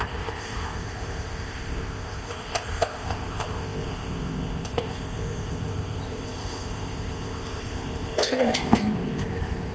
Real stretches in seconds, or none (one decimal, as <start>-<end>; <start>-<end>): none